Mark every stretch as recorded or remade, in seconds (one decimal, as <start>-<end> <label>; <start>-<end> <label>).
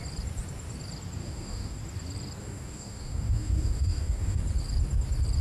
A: 0.0-1.2 recorded; 1.2-1.8 remade; 1.8-2.4 recorded; 2.4-4.4 remade; 4.4-5.4 recorded